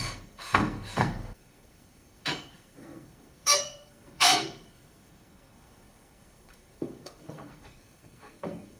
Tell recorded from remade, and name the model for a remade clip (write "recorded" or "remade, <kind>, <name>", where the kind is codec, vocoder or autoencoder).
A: remade, codec, SNAC